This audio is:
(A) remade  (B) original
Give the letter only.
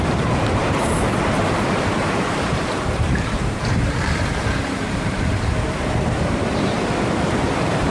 A